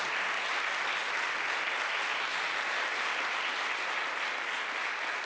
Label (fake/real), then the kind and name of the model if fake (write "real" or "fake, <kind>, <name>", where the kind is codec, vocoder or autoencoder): real